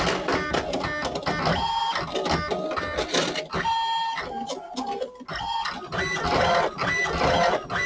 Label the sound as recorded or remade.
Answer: recorded